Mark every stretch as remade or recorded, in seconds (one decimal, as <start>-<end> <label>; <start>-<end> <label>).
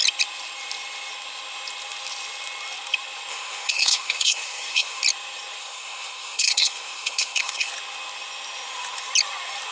0.0-3.3 recorded; 3.3-5.0 remade; 5.0-5.6 recorded; 5.6-7.7 remade; 7.7-9.7 recorded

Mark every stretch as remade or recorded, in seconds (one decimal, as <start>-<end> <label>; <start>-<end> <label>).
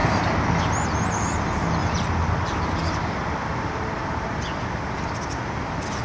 0.0-1.8 recorded; 1.8-5.4 remade; 5.4-6.0 recorded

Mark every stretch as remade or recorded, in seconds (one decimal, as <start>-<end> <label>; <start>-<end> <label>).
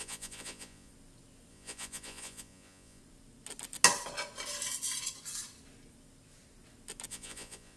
0.0-0.9 remade; 0.9-1.5 recorded; 1.5-3.0 remade; 3.0-7.1 recorded; 7.1-7.8 remade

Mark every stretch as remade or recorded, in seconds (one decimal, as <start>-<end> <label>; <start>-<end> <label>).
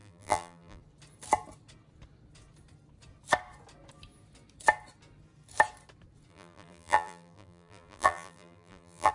0.0-0.8 remade; 0.8-6.3 recorded; 6.3-9.1 remade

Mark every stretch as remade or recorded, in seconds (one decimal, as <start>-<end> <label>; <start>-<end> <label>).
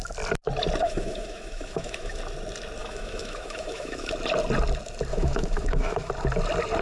0.0-0.8 recorded; 0.8-2.2 remade; 2.2-2.8 recorded; 2.8-4.1 remade; 4.1-5.1 recorded; 5.1-6.1 remade; 6.1-6.8 recorded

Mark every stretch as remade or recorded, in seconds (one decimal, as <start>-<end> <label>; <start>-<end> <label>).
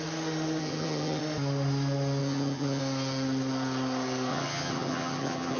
0.0-0.6 recorded; 0.6-1.2 remade; 1.2-2.2 recorded; 2.2-2.8 remade; 2.8-4.3 recorded; 4.3-5.6 remade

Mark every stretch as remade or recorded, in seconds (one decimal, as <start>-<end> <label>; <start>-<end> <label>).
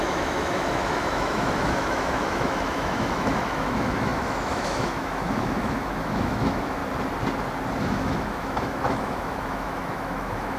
0.0-6.8 remade; 6.8-7.8 recorded; 7.8-10.6 remade